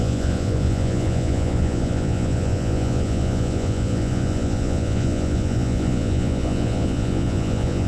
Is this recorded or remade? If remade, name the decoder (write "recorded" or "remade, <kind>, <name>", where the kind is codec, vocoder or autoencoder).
remade, vocoder, Vocos